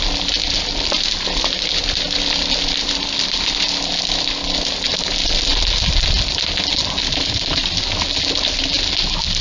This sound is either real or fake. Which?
real